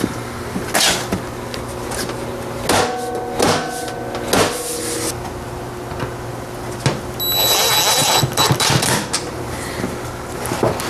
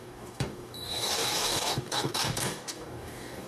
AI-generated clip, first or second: second